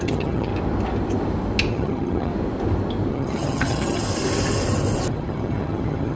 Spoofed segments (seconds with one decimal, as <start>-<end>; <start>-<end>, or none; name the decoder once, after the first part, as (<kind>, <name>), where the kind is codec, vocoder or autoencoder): 0.0-0.5 (vocoder, HiFi-GAN); 1.7-2.3; 3.1-4.0; 5.1-6.2